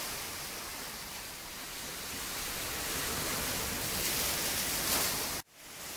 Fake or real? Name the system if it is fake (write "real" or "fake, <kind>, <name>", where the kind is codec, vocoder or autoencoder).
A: real